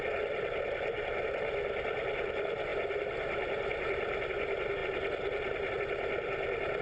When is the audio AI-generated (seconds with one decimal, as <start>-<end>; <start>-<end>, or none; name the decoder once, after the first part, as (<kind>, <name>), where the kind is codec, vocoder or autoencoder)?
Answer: none